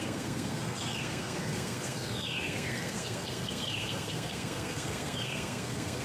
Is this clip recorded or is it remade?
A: remade